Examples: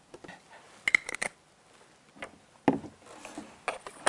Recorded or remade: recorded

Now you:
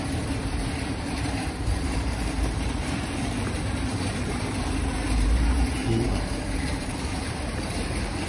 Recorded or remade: remade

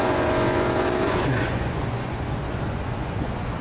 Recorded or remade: remade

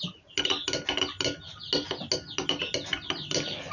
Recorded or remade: recorded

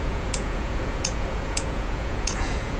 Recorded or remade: remade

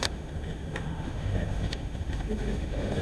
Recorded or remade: remade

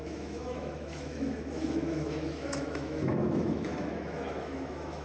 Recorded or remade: remade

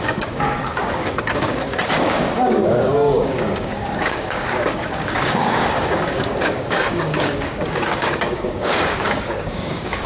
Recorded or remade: remade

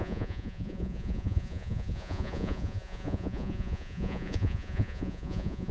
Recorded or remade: remade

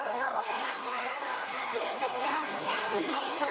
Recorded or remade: remade